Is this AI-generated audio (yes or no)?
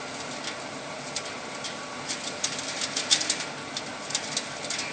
no